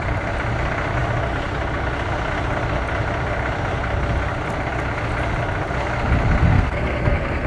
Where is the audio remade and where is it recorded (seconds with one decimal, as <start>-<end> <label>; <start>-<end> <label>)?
0.0-6.4 recorded; 6.4-7.5 remade